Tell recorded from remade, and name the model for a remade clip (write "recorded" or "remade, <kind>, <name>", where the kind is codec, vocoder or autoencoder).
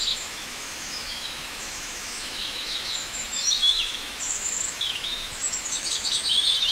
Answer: remade, autoencoder, DAC-VAE